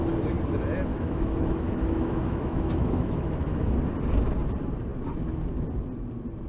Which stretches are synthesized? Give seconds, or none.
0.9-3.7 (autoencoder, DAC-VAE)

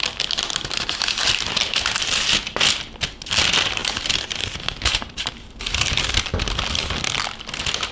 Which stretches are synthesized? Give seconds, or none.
1.2-2.2 (vocoder, BigVGAN v2); 3.8-5.8